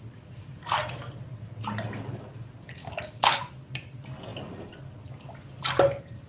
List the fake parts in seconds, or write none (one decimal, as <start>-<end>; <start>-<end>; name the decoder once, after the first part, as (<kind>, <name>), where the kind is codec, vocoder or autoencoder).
2.8-3.4 (codec, DAC)